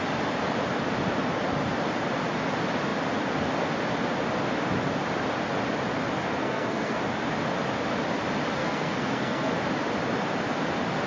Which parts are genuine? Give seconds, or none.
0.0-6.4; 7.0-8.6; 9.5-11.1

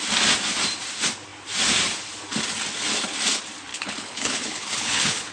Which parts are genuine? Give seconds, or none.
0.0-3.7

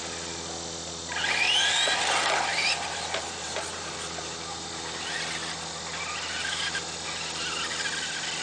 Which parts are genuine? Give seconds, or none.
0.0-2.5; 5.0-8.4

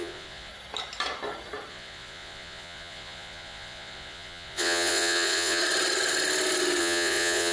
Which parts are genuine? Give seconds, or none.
0.5-1.7; 5.6-6.8

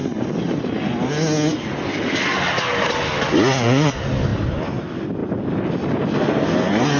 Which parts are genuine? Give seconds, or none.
0.0-7.0

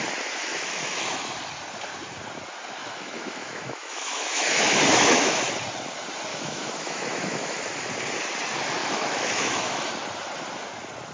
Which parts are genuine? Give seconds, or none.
0.0-0.5; 1.2-2.8; 5.5-6.3; 7.6-8.8; 9.9-11.1